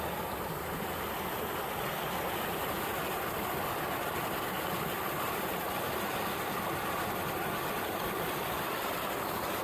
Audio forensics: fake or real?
real